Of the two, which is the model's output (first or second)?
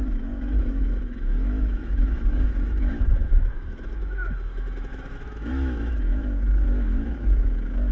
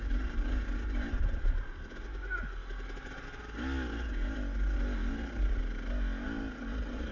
first